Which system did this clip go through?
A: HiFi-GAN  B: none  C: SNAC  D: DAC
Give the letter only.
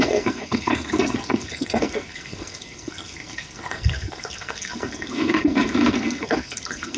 C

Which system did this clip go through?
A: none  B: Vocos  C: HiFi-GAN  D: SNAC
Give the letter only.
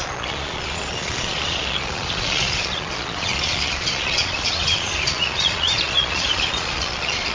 B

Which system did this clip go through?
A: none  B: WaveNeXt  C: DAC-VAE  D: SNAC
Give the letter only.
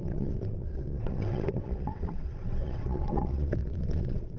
B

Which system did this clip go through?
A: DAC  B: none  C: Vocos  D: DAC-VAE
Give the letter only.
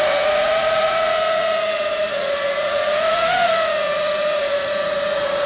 C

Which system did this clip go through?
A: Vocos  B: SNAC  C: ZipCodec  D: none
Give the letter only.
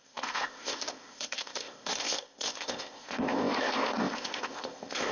C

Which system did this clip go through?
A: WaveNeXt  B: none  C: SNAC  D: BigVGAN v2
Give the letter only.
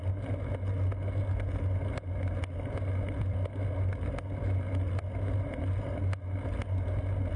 B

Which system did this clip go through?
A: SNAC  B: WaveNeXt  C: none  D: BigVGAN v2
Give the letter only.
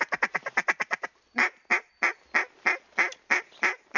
C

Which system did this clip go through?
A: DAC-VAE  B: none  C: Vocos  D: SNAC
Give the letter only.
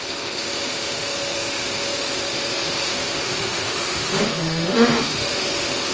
A